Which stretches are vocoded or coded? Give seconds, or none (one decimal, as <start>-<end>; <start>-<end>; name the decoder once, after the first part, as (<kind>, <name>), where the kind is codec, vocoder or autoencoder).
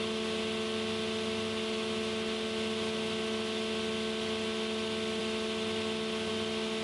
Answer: none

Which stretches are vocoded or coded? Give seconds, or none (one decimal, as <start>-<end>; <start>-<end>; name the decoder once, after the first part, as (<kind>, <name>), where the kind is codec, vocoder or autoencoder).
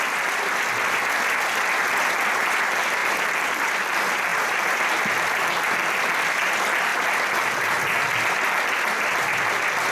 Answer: 3.0-3.7 (vocoder, BigVGAN v2); 4.3-4.9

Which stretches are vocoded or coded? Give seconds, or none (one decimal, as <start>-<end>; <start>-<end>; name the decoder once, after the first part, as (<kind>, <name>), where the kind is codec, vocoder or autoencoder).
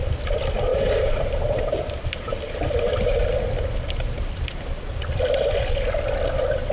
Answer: 0.7-1.7 (vocoder, BigVGAN v2)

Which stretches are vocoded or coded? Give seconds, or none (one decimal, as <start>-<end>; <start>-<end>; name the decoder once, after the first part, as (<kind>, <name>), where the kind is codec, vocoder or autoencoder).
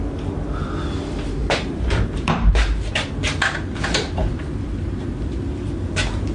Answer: 1.4-2.5 (vocoder, BigVGAN v2); 4.2-5.7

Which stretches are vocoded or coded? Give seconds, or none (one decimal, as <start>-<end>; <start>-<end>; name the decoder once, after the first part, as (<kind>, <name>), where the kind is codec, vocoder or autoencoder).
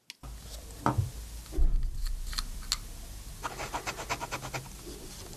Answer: none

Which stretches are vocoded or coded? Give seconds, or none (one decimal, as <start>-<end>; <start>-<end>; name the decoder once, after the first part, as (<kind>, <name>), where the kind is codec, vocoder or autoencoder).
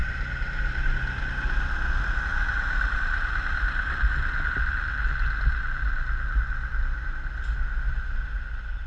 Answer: 0.0-1.3 (vocoder, BigVGAN v2); 2.3-4.9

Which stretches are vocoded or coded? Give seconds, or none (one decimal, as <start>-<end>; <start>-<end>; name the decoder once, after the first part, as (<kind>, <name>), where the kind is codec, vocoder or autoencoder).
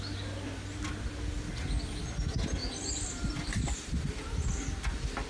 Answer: 2.6-4.5 (vocoder, BigVGAN v2)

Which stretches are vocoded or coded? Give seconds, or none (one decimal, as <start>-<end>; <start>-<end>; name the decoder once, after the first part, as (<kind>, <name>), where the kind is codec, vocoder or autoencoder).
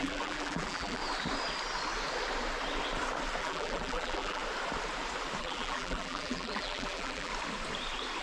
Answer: 0.0-1.0 (vocoder, BigVGAN v2); 3.4-4.4; 5.4-7.3